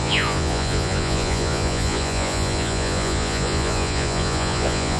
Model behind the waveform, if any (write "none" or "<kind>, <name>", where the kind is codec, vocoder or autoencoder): vocoder, Vocos